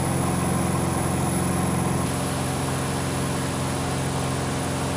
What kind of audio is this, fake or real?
real